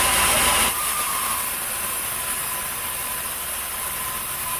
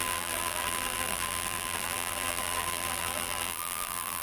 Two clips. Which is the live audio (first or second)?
first